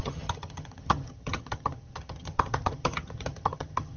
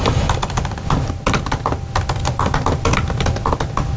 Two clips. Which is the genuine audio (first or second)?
second